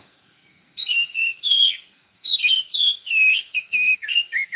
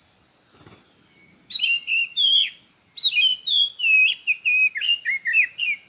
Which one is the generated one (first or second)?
first